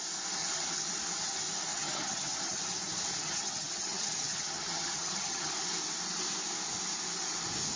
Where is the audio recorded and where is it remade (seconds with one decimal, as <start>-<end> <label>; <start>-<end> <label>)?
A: 0.0-0.4 recorded; 0.4-0.9 remade; 0.9-1.7 recorded; 1.7-2.6 remade; 2.6-3.2 recorded; 3.2-5.5 remade; 5.5-7.8 recorded